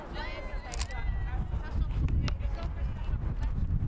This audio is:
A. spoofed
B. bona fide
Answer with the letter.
B